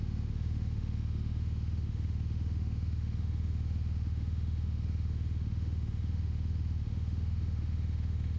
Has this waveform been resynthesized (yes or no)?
yes